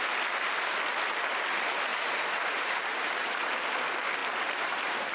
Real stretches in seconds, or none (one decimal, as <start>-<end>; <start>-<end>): 0.0-1.9; 3.2-4.2